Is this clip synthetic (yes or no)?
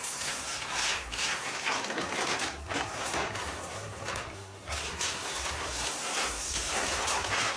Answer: yes